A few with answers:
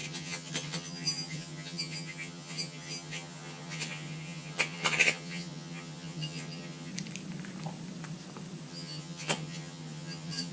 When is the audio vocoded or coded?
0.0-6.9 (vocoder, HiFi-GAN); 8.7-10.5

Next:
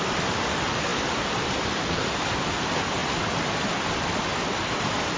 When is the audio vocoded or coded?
none